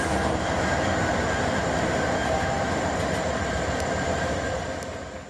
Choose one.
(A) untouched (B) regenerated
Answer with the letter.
B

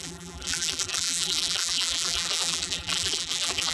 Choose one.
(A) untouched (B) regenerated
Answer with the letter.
B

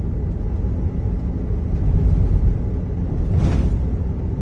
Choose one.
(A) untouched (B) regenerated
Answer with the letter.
A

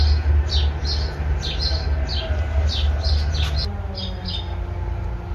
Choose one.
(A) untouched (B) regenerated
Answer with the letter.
A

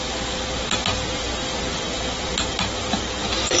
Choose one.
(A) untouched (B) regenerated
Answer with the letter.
A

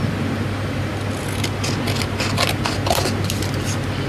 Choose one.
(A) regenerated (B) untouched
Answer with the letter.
B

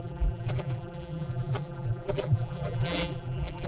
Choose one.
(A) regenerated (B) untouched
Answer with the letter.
A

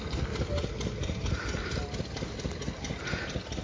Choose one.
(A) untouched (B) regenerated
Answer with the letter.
B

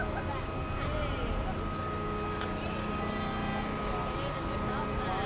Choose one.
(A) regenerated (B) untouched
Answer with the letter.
B